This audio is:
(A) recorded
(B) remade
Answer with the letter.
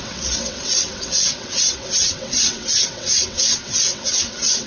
B